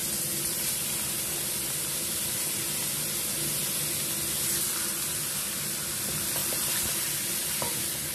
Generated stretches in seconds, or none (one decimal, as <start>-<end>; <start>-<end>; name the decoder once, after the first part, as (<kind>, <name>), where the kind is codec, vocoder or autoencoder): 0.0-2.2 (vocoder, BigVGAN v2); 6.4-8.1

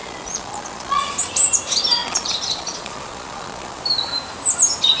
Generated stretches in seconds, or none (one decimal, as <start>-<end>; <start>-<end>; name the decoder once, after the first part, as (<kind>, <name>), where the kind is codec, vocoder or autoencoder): 0.0-1.1 (vocoder, Vocos); 2.0-3.8

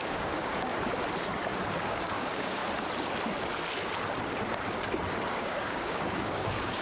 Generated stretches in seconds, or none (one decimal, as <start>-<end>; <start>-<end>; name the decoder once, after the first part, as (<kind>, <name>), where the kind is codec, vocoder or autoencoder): 0.0-0.7 (codec, DAC); 1.7-2.6; 5.3-6.8

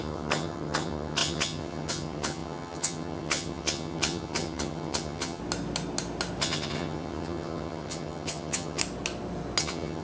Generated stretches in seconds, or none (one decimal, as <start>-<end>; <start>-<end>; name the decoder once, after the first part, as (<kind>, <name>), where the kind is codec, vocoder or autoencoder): 0.0-5.4 (vocoder, HiFi-GAN); 6.4-8.8; 9.6-10.0

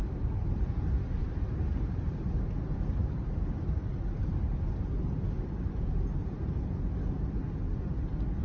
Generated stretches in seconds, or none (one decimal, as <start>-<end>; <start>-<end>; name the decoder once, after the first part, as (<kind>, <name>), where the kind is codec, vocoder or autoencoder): 1.2-2.2 (vocoder, BigVGAN v2)

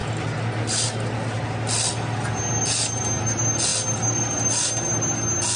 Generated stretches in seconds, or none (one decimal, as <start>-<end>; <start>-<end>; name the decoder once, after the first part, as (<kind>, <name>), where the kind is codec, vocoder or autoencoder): none

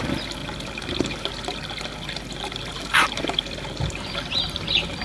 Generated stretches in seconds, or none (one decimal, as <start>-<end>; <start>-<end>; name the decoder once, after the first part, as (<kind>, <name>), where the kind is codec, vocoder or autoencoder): none